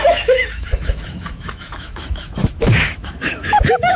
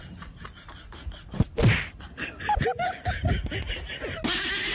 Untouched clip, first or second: second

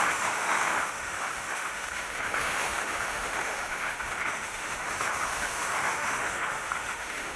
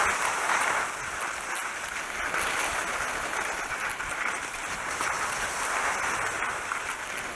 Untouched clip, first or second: second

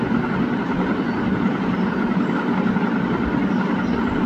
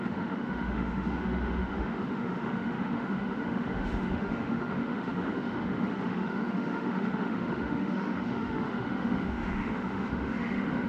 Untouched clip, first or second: first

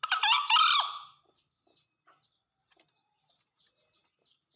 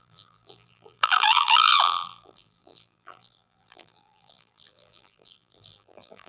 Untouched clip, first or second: first